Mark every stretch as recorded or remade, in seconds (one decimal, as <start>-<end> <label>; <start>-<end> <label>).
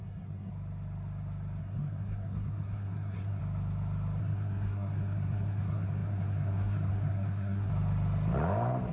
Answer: 0.0-0.5 remade; 0.5-1.6 recorded; 1.6-3.4 remade; 3.4-4.2 recorded; 4.2-7.7 remade; 7.7-8.9 recorded